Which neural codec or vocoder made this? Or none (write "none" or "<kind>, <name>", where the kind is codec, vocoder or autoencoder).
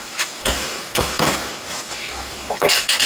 codec, DAC